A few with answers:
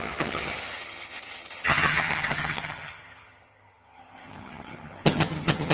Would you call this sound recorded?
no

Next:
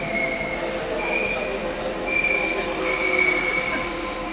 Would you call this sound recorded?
yes